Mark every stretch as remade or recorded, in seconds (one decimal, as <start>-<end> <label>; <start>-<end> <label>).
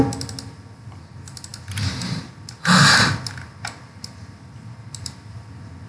0.0-5.9 recorded